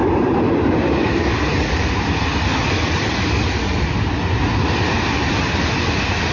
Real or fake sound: real